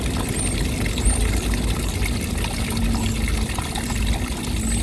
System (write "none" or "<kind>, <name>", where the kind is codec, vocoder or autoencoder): none